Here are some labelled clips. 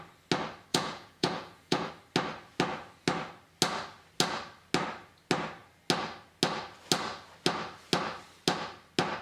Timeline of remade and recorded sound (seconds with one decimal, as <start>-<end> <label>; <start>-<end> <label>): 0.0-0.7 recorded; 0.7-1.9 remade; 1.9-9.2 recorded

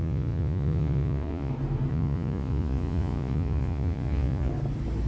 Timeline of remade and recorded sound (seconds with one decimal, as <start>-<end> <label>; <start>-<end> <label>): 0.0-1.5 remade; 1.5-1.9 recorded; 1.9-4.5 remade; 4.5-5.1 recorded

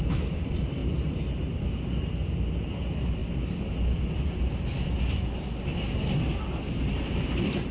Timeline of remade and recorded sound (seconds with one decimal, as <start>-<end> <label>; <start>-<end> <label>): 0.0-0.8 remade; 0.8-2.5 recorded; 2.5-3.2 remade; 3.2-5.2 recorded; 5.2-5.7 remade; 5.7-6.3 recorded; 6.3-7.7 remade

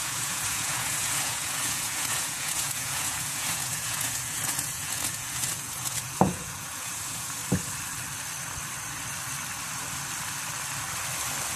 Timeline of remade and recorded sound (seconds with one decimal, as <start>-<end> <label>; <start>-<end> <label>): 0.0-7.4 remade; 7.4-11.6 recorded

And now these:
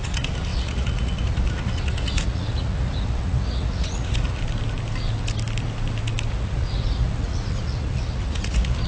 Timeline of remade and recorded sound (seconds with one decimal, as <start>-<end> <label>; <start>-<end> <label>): 0.0-4.4 remade; 4.4-6.3 recorded; 6.3-8.9 remade

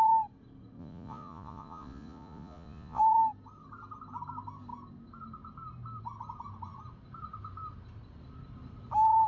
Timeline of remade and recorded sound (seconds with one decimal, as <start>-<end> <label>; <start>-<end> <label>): 0.0-0.8 recorded; 0.8-3.0 remade; 3.0-9.3 recorded

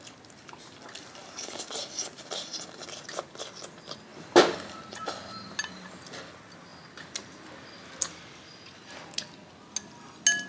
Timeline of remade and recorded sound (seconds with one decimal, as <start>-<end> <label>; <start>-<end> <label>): 0.0-10.5 recorded